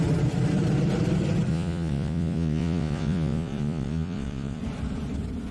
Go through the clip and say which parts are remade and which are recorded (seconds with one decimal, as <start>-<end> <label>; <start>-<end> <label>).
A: 0.0-1.5 recorded; 1.5-4.6 remade; 4.6-5.5 recorded